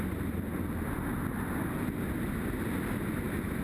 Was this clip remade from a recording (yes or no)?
no